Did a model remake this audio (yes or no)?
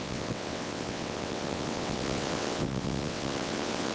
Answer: yes